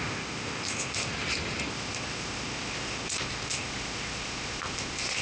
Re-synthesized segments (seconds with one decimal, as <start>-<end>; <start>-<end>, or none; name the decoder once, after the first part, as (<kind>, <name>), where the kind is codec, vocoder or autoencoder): 0.0-1.1 (codec, ZipCodec); 1.7-5.2